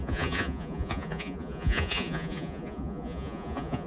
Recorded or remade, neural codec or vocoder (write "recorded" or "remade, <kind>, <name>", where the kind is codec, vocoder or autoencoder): remade, vocoder, Vocos